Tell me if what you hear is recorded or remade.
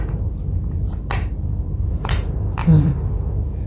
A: remade